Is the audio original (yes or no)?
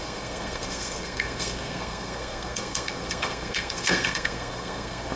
no